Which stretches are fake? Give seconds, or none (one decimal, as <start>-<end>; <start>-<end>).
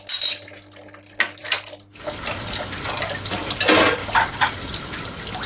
none